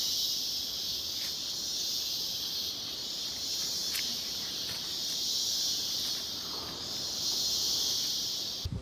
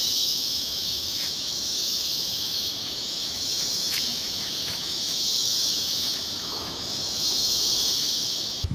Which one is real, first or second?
first